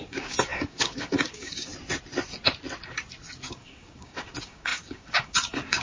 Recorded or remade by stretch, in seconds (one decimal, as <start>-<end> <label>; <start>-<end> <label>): 0.0-1.7 remade; 1.7-3.5 recorded; 3.5-5.8 remade

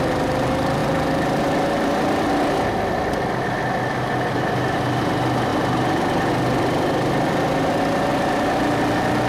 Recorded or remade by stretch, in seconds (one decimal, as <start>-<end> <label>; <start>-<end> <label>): 0.0-9.3 recorded

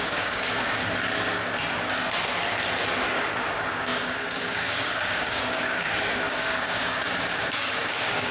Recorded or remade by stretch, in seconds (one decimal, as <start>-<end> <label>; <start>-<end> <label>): 0.0-0.8 remade; 0.8-3.1 recorded; 3.1-8.3 remade

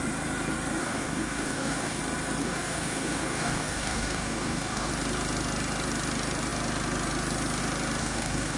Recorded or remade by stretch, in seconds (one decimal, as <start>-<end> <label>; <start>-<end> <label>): 0.0-0.8 recorded; 0.8-2.0 remade; 2.0-2.4 recorded; 2.4-4.9 remade; 4.9-8.0 recorded; 8.0-8.6 remade